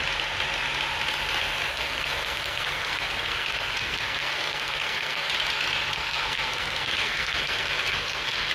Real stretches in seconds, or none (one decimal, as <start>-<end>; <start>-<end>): 0.0-1.7; 5.3-5.9